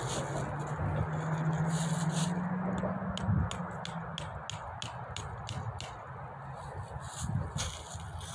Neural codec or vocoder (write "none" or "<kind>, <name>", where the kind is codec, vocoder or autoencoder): none